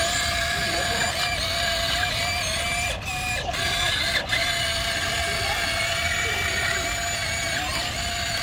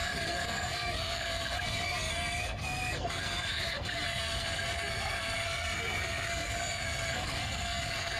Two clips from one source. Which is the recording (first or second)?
first